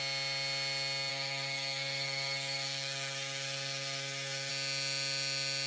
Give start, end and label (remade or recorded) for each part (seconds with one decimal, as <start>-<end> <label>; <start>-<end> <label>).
0.0-1.1 recorded; 1.1-4.5 remade; 4.5-5.7 recorded